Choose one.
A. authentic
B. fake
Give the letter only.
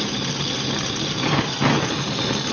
A